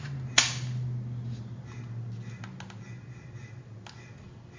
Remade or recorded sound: recorded